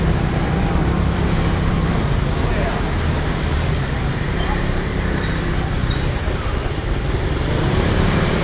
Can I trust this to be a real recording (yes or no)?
no